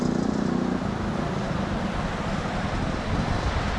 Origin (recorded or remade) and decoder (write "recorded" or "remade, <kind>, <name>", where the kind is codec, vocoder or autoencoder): recorded